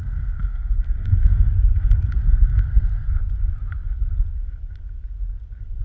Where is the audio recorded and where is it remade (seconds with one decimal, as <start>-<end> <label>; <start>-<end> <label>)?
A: 0.0-1.5 remade; 1.5-2.2 recorded; 2.2-3.2 remade; 3.2-5.8 recorded